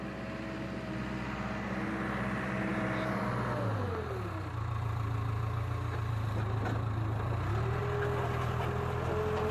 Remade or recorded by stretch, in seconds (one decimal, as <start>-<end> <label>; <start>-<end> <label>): 0.0-9.5 recorded